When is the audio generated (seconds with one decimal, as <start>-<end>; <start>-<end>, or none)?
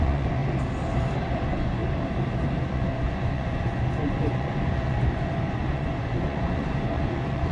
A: 0.0-0.4; 1.2-1.8; 2.7-7.5